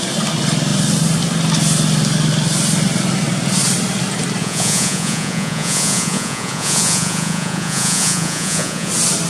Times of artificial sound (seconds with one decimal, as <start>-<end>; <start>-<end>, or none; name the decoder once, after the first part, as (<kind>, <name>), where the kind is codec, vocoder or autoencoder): 4.4-8.9 (vocoder, Vocos)